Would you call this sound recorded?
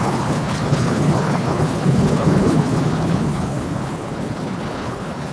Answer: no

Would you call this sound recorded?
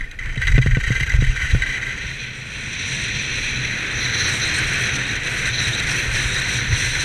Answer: yes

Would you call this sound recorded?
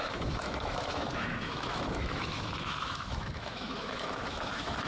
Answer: no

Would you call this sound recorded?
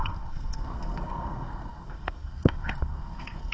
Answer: no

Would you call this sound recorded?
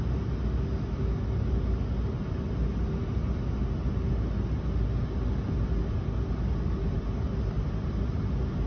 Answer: yes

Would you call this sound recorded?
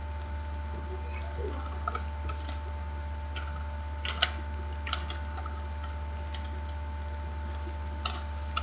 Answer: yes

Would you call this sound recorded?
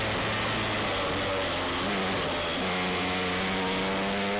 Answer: yes